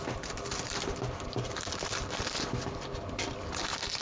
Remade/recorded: recorded